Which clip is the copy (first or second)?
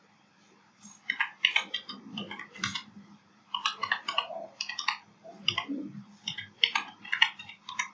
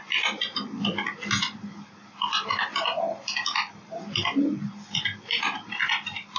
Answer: first